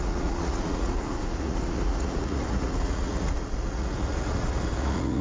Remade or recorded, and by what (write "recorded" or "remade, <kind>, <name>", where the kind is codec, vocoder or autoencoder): remade, vocoder, Vocos